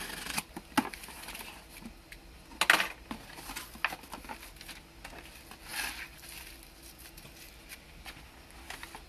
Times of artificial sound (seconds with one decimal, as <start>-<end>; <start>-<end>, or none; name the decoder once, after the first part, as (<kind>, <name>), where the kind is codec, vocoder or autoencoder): none